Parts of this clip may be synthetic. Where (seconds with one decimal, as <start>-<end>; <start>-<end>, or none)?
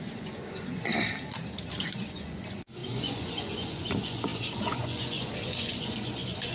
0.0-0.9; 1.8-6.5